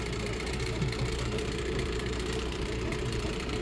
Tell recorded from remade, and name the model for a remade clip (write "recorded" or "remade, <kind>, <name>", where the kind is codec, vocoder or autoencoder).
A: remade, vocoder, BigVGAN v2